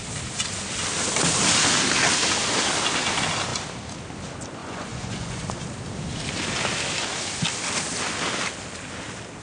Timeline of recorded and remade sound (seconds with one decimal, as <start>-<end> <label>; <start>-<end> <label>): 0.0-4.6 recorded; 4.6-5.5 remade; 5.5-9.4 recorded